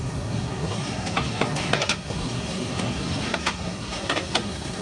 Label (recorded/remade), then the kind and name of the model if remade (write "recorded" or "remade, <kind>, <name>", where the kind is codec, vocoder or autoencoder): remade, codec, SNAC